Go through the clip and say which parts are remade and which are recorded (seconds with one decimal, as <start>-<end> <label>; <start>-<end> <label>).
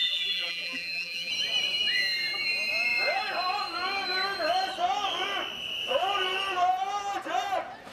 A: 0.0-1.3 remade; 1.3-7.9 recorded